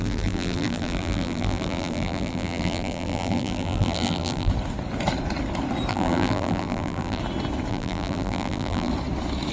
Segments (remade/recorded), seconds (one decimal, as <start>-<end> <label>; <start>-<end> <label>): 0.0-4.5 remade; 4.5-5.9 recorded; 5.9-7.2 remade; 7.2-7.7 recorded; 7.7-8.9 remade; 8.9-9.5 recorded